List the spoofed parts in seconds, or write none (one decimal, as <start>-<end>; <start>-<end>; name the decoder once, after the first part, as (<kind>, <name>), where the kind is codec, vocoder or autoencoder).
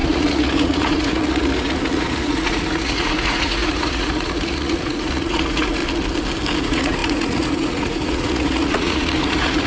0.0-5.8 (vocoder, Vocos); 6.6-9.7